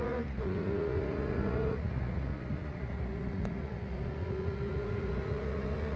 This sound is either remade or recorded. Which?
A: remade